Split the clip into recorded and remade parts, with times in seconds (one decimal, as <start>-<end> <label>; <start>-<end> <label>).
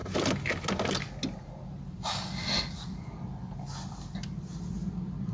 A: 0.0-5.3 recorded